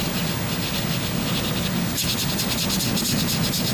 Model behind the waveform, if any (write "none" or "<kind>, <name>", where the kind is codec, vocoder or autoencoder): none